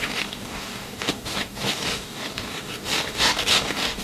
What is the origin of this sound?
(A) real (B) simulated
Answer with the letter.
B